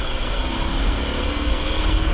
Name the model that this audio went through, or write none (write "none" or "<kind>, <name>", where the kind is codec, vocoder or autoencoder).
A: codec, SNAC